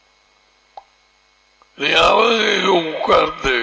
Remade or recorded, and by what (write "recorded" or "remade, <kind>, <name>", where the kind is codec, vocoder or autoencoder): recorded